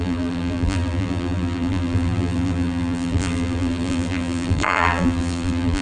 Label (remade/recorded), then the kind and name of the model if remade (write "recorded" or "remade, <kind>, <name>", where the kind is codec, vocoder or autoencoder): remade, vocoder, BigVGAN v2